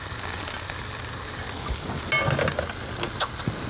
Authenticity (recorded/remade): recorded